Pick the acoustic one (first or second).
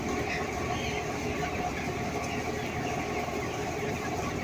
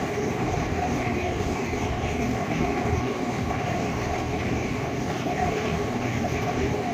first